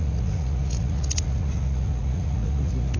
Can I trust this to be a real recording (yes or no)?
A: no